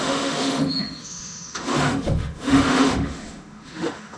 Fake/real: fake